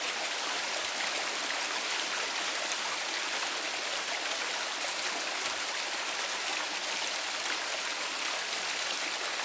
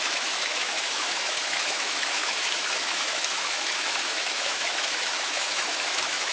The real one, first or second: first